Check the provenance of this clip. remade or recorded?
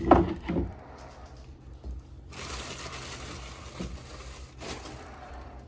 recorded